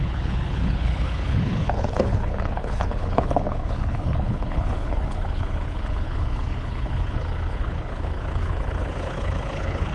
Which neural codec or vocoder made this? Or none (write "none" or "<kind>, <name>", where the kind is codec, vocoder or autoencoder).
codec, HILCodec